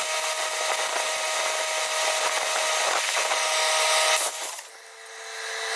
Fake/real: real